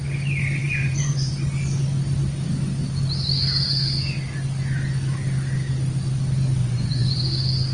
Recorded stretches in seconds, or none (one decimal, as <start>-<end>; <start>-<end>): 0.0-0.6; 1.3-6.6; 7.2-7.7